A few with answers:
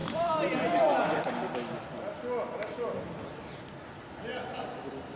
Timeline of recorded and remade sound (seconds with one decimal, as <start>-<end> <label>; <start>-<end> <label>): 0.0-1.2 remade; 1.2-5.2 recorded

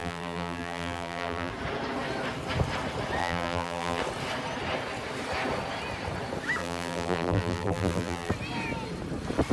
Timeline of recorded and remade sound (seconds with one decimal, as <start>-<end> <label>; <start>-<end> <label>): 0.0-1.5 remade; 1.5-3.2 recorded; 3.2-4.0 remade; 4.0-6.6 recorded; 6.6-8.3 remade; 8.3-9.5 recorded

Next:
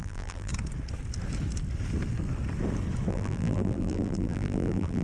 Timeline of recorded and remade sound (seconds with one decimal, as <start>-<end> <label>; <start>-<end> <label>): 0.0-0.5 remade; 0.5-3.1 recorded; 3.1-5.0 remade

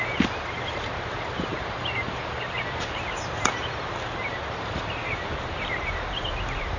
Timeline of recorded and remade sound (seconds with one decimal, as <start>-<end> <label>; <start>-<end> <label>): 0.0-6.8 remade